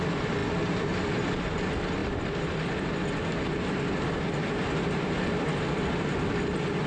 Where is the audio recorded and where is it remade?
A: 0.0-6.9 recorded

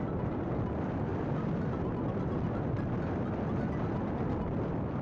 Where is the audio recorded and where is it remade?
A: 0.0-5.0 recorded

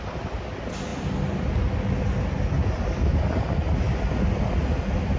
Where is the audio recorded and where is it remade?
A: 0.0-5.2 recorded

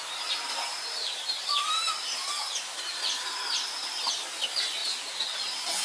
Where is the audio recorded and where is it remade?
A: 0.0-0.7 recorded; 0.7-4.2 remade; 4.2-4.8 recorded; 4.8-5.8 remade

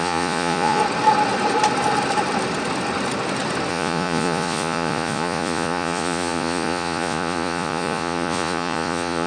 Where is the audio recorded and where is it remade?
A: 0.0-0.8 remade; 0.8-3.7 recorded; 3.7-9.3 remade

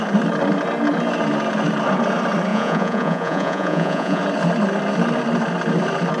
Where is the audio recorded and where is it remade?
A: 0.0-2.5 recorded; 2.5-4.2 remade; 4.2-6.2 recorded

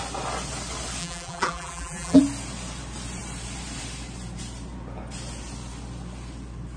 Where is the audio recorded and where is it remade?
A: 0.0-1.0 recorded; 1.0-2.2 remade; 2.2-6.8 recorded

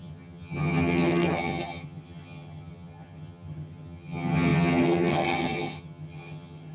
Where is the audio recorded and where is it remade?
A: 0.0-6.7 remade